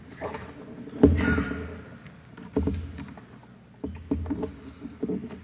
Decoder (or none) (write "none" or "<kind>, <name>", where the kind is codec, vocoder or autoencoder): none